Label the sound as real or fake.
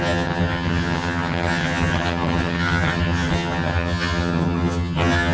fake